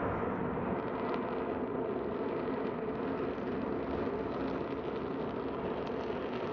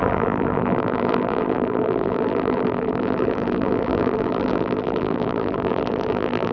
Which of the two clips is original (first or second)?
first